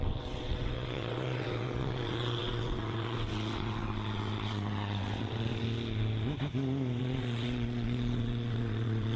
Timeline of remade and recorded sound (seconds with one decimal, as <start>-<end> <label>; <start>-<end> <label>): 0.0-5.6 remade; 5.6-7.0 recorded; 7.0-9.2 remade